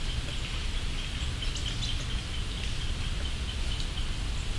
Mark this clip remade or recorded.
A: recorded